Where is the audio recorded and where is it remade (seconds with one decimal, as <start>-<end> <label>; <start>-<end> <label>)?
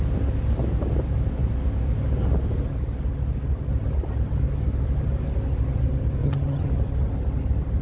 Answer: 0.0-6.2 recorded; 6.2-6.7 remade; 6.7-7.8 recorded